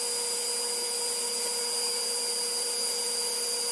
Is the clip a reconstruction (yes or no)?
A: no